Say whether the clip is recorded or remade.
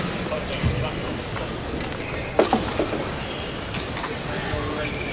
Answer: recorded